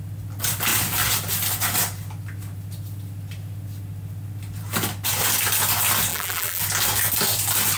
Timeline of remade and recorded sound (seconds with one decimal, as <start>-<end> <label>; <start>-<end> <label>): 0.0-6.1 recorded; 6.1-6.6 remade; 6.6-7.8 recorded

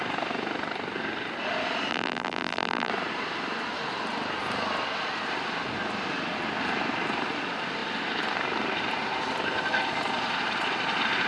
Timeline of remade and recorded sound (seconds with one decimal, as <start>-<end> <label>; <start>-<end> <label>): 0.0-1.9 recorded; 1.9-2.9 remade; 2.9-11.3 recorded

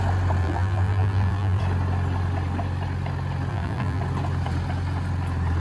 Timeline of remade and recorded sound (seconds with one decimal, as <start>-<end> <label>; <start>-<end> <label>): 0.0-0.4 recorded; 0.4-1.6 remade; 1.6-3.5 recorded; 3.5-4.0 remade; 4.0-5.6 recorded

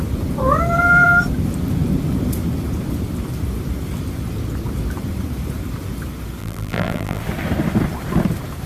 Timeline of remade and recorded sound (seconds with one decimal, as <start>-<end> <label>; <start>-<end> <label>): 0.0-6.4 recorded; 6.4-7.2 remade; 7.2-8.7 recorded

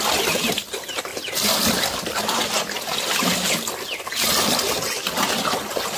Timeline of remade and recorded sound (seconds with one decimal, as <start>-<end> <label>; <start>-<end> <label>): 0.0-1.1 recorded; 1.1-4.7 remade; 4.7-6.0 recorded

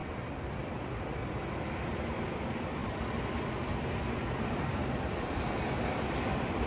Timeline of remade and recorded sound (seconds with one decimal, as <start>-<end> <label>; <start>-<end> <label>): 0.0-6.7 remade

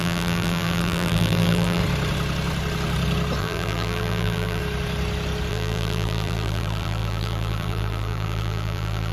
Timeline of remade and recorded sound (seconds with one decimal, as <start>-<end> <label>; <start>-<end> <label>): 0.0-1.8 remade; 1.8-3.4 recorded; 3.4-4.6 remade; 4.6-5.5 recorded; 5.5-9.1 remade